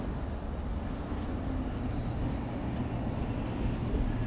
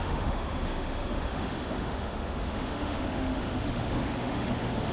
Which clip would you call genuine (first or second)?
first